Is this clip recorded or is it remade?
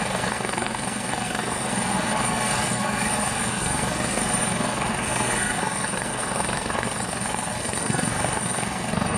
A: remade